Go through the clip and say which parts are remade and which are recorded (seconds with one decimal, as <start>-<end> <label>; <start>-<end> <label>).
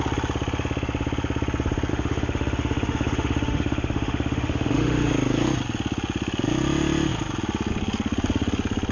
0.0-1.9 recorded; 1.9-5.1 remade; 5.1-8.9 recorded